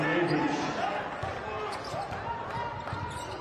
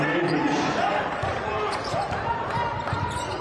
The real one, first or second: first